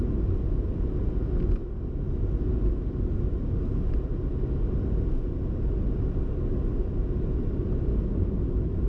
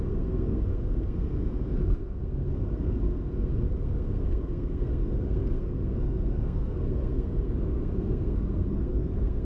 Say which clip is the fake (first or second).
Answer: second